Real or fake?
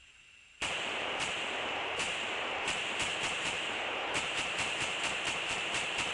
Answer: fake